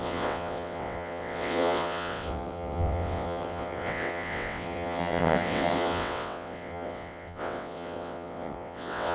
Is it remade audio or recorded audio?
remade